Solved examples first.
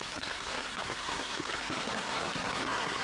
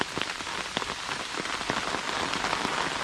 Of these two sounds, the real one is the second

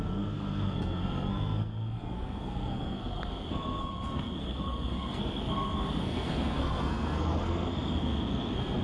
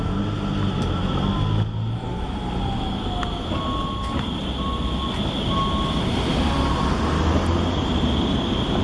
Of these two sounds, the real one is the second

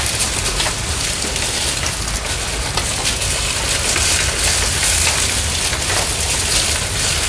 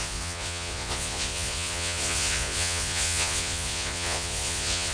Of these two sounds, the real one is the first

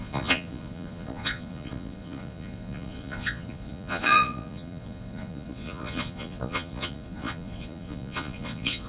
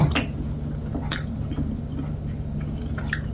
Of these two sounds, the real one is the second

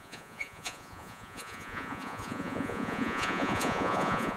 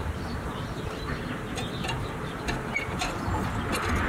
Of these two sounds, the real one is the second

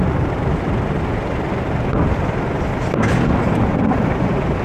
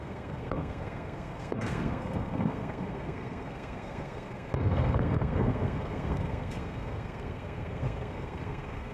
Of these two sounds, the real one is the first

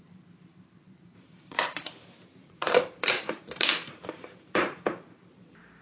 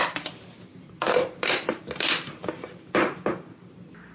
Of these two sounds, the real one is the second